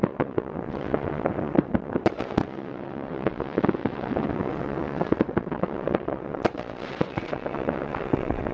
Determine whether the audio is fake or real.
fake